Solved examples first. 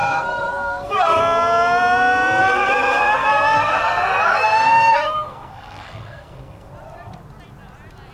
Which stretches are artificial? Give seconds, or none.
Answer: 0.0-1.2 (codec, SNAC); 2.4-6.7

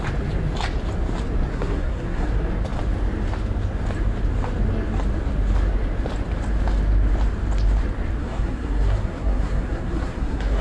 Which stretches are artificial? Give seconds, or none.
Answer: 1.5-2.3 (codec, SNAC); 8.2-10.6

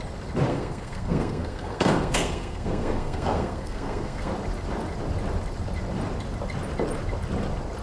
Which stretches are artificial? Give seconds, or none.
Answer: 0.5-4.3 (codec, SNAC)

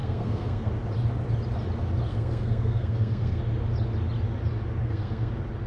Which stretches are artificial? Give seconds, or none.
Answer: 0.0-0.7 (codec, SNAC); 2.1-3.4; 4.8-5.3

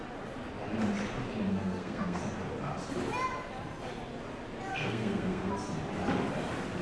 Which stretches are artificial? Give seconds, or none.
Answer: 1.5-2.2 (codec, SNAC); 4.7-5.5